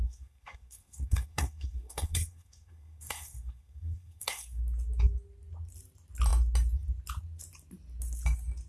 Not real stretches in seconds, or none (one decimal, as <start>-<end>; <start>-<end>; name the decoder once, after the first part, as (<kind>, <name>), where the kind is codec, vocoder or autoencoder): 0.0-4.6 (codec, SNAC)